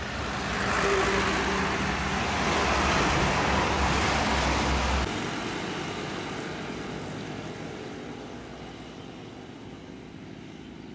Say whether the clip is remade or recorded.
recorded